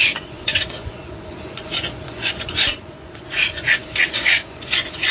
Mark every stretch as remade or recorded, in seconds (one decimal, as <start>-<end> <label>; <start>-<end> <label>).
0.0-5.1 remade

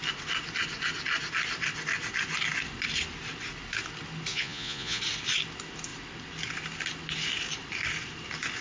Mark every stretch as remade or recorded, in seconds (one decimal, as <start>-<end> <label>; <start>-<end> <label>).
0.0-4.3 recorded; 4.3-5.0 remade; 5.0-8.6 recorded

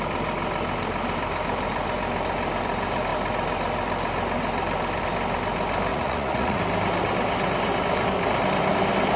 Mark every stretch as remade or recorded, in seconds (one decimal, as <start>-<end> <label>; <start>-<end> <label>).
0.0-5.9 recorded; 5.9-6.6 remade; 6.6-9.2 recorded